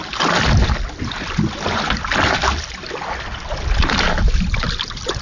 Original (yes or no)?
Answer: yes